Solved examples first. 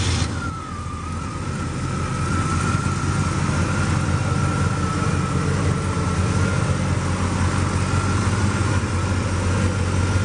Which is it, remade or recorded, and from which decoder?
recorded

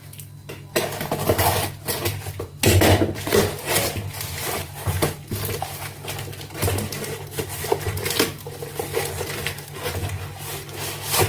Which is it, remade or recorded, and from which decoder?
recorded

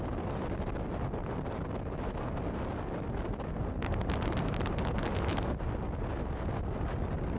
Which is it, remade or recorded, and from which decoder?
recorded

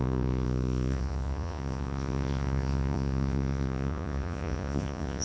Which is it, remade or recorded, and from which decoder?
remade, vocoder, Vocos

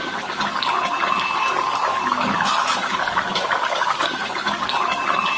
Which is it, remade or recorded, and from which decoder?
remade, codec, DAC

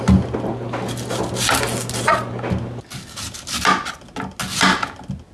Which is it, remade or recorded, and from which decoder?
recorded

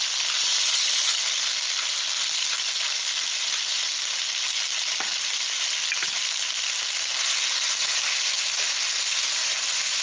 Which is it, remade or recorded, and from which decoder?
recorded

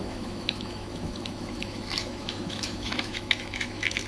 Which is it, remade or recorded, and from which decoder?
remade, autoencoder, DAC-VAE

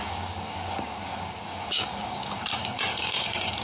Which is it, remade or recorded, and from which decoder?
remade, codec, DAC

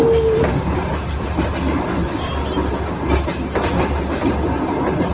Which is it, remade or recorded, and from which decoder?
recorded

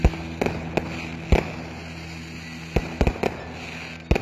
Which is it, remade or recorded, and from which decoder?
recorded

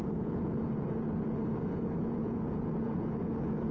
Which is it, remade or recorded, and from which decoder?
remade, vocoder, Vocos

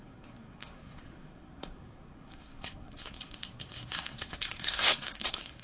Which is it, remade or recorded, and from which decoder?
remade, codec, SNAC